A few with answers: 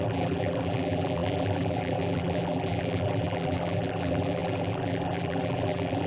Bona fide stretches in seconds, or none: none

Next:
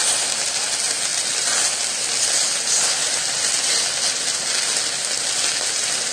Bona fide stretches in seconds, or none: 0.0-1.1; 2.0-3.0; 3.7-6.1

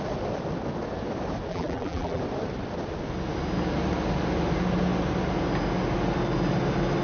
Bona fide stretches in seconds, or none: 0.0-1.5; 2.2-7.0

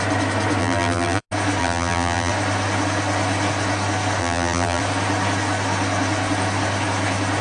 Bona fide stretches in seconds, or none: 0.0-0.6; 1.2-1.6; 2.3-4.2; 4.8-7.4

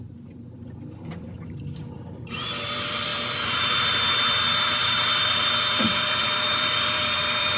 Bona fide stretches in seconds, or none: none